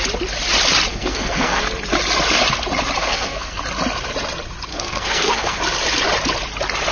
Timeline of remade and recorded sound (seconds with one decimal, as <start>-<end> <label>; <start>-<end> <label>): 0.0-0.9 recorded; 0.9-1.6 remade; 1.6-3.0 recorded; 3.0-3.6 remade; 3.6-4.7 recorded; 4.7-5.6 remade; 5.6-6.9 recorded